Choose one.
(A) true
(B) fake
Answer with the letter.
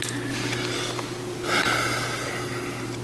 A